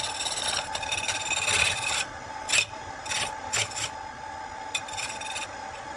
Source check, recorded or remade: recorded